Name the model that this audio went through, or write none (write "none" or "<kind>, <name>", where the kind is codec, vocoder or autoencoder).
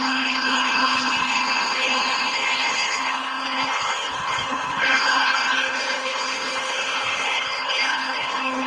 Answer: codec, HILCodec